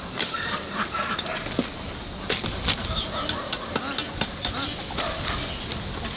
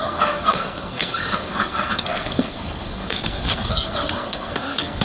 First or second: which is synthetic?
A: second